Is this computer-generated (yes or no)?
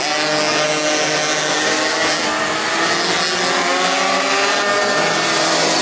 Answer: no